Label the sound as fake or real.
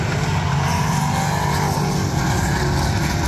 real